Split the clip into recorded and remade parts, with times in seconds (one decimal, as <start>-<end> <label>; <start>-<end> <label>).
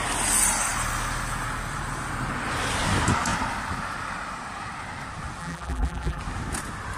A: 0.0-5.4 recorded; 5.4-6.2 remade; 6.2-7.0 recorded